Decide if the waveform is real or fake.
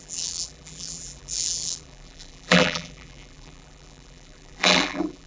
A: fake